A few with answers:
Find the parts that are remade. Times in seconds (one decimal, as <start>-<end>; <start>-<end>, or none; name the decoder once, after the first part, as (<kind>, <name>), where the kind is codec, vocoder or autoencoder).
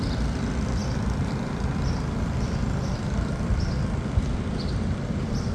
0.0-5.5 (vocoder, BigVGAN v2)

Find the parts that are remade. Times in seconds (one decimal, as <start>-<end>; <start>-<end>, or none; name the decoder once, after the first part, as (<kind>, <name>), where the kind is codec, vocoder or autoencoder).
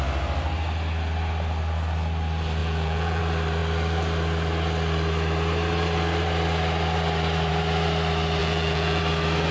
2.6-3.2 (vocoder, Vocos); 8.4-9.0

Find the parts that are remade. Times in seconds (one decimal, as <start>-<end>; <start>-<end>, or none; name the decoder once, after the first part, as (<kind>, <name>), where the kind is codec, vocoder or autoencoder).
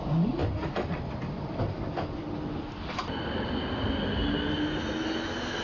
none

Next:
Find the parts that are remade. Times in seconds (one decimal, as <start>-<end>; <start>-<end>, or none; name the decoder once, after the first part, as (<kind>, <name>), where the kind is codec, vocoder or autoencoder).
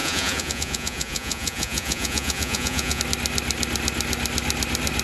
0.0-3.0 (vocoder, Vocos)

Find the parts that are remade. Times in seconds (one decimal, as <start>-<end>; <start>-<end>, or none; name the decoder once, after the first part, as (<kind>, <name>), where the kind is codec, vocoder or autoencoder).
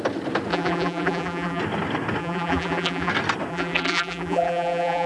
0.5-1.6 (vocoder, BigVGAN v2); 2.2-3.1; 3.5-5.1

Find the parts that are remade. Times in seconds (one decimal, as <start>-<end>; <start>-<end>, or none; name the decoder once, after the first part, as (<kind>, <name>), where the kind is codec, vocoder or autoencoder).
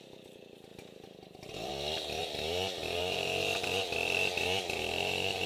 0.7-1.7 (vocoder, BigVGAN v2); 2.2-5.5